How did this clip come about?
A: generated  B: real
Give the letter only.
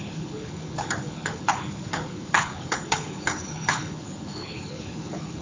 A